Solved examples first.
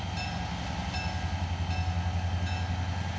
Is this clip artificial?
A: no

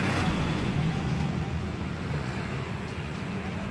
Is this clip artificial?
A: yes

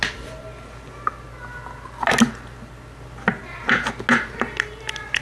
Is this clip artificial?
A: no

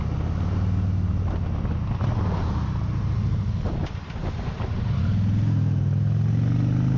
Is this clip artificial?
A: no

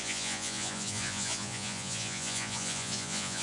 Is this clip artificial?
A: yes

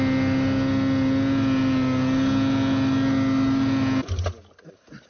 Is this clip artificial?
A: no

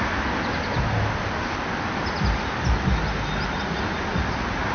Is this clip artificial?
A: no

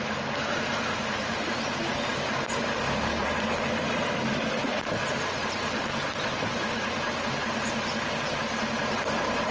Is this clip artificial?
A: no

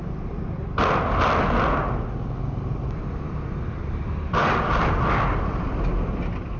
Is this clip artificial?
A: no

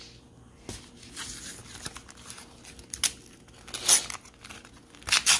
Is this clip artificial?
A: no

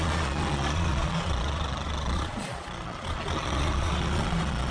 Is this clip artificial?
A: yes